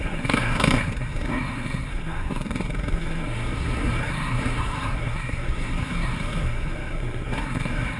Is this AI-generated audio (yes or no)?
yes